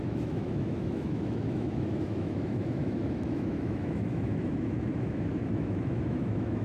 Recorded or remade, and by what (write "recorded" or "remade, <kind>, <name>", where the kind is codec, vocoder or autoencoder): remade, autoencoder, DAC-VAE